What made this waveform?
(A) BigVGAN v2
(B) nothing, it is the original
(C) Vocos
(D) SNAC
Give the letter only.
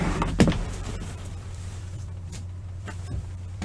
A